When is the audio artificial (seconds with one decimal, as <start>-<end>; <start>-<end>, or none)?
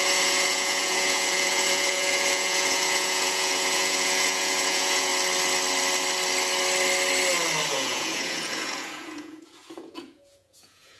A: 0.0-5.1; 7.7-11.0